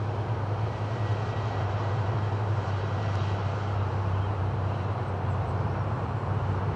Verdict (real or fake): fake